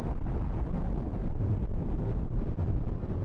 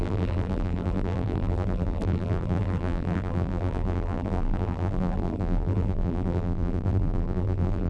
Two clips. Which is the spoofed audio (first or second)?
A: second